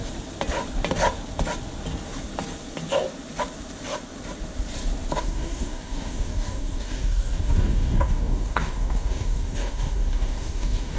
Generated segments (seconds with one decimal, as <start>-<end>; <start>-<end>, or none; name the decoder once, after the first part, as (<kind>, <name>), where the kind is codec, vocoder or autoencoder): 5.2-11.0 (codec, DAC)